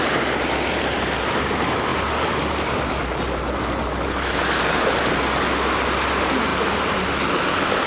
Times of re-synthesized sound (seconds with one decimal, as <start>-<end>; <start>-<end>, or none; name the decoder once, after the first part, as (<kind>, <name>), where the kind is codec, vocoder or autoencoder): none